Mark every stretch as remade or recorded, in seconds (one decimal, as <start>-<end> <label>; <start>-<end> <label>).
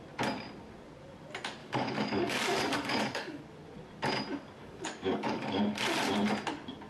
0.0-1.6 recorded; 1.6-3.4 remade; 3.4-4.6 recorded; 4.6-5.6 remade; 5.6-6.9 recorded